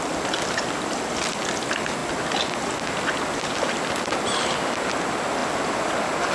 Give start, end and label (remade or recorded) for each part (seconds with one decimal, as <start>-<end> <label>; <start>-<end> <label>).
0.0-6.3 recorded